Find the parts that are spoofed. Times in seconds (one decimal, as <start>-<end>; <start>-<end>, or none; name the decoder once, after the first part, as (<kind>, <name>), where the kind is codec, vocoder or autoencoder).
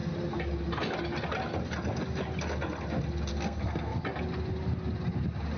3.3-4.0 (codec, SNAC)